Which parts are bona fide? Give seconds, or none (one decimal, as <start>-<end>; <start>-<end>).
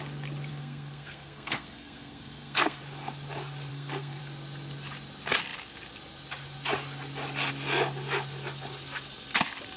0.0-0.5; 2.8-3.7; 4.2-9.8